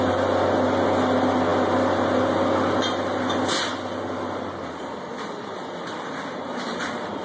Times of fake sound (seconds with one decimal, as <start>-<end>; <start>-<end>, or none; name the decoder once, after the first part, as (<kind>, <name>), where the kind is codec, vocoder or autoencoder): none